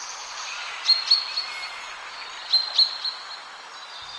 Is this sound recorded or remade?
recorded